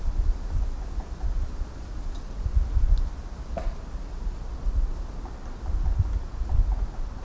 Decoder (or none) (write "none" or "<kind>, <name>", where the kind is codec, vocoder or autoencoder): none